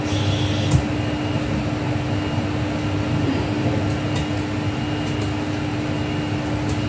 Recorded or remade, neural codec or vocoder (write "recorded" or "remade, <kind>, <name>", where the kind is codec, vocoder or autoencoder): recorded